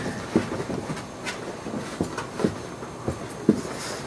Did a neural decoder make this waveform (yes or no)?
no